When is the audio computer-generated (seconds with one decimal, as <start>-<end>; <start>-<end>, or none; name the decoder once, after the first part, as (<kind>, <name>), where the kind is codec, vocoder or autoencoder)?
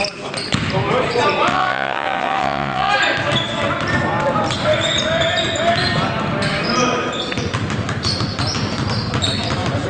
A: 1.5-2.9 (vocoder, WaveNeXt)